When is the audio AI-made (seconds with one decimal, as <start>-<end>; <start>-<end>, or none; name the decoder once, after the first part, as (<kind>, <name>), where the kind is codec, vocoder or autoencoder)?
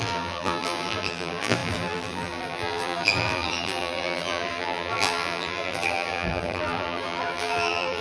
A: 0.0-8.0 (vocoder, BigVGAN v2)